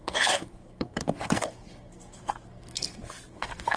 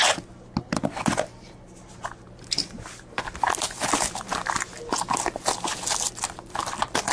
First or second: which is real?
second